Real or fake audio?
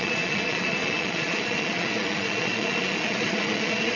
fake